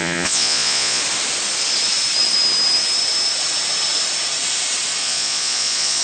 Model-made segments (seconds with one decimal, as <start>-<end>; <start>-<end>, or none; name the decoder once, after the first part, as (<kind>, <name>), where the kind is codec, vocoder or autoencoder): 0.0-1.0 (vocoder, Vocos); 5.0-6.0